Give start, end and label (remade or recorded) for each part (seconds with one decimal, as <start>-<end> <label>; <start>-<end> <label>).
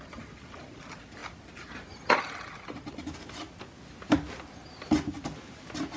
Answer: 0.0-6.0 recorded